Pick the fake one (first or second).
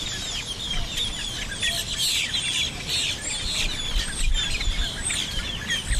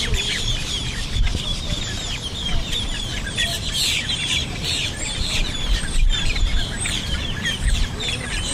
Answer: second